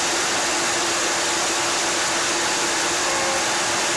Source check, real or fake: real